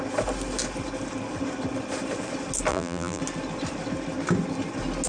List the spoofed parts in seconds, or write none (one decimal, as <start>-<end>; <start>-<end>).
2.7-3.2